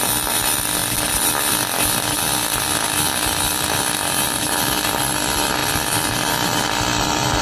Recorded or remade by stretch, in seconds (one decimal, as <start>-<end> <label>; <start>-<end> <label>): 0.0-7.4 recorded